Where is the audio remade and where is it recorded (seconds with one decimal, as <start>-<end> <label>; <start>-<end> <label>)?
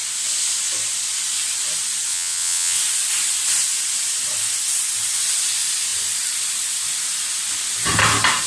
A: 0.0-2.1 recorded; 2.1-2.8 remade; 2.8-8.5 recorded